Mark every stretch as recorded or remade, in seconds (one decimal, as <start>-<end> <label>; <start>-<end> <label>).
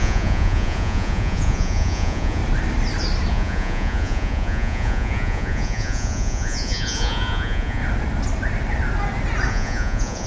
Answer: 0.0-2.4 remade; 2.4-3.3 recorded; 3.3-7.8 remade; 7.8-9.5 recorded; 9.5-10.3 remade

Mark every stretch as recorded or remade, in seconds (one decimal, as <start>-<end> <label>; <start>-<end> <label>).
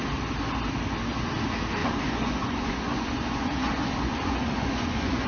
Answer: 0.0-1.8 recorded; 1.8-5.3 remade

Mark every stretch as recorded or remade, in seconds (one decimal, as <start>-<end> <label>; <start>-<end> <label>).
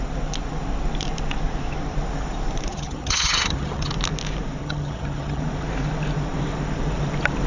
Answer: 0.0-2.7 recorded; 2.7-3.9 remade; 3.9-4.6 recorded; 4.6-5.4 remade; 5.4-7.5 recorded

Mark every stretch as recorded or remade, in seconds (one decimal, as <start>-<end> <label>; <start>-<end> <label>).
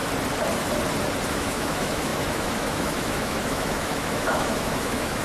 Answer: 0.0-1.3 recorded; 1.3-5.2 remade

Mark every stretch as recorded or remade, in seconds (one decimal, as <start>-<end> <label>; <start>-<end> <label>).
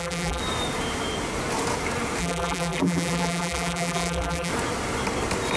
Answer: 0.0-0.4 remade; 0.4-2.2 recorded; 2.2-4.5 remade; 4.5-5.6 recorded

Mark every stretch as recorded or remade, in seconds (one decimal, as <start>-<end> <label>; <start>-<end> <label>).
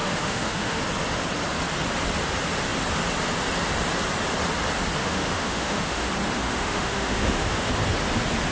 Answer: 0.0-0.8 remade; 0.8-5.0 recorded; 5.0-6.1 remade; 6.1-6.5 recorded; 6.5-7.7 remade; 7.7-8.5 recorded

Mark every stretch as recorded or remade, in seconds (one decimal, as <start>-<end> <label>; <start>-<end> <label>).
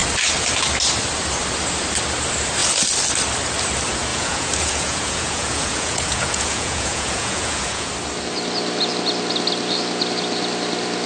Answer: 0.0-4.1 recorded; 4.1-7.9 remade; 7.9-11.1 recorded